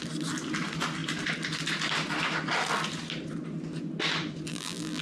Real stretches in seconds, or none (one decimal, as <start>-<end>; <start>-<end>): 0.0-4.5